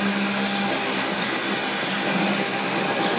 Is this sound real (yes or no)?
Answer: yes